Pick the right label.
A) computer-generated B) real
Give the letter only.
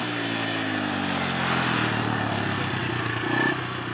B